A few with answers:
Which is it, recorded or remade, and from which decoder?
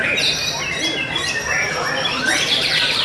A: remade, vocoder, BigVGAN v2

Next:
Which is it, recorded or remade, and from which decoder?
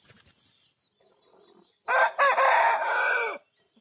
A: recorded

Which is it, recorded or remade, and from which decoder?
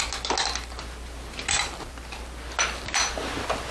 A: recorded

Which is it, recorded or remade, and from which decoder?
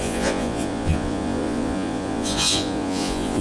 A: remade, vocoder, Vocos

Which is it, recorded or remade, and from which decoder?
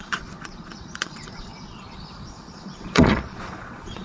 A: remade, vocoder, Vocos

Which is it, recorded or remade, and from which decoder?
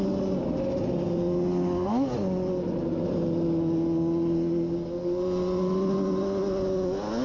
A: recorded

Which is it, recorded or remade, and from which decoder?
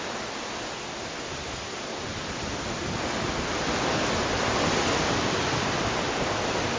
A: recorded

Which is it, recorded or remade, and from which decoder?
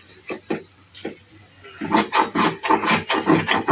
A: recorded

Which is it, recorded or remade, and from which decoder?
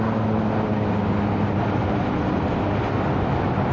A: recorded